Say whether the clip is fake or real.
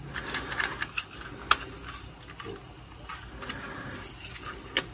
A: real